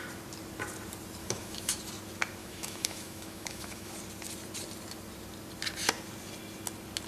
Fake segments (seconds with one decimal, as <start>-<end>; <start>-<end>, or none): 1.2-1.8; 2.4-3.9